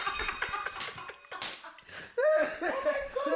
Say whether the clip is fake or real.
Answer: fake